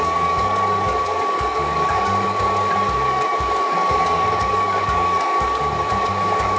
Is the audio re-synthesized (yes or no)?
yes